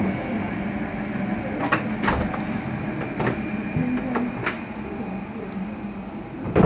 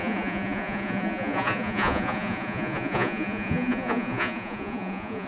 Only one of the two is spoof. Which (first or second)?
second